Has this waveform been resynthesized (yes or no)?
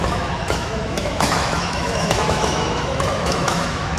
yes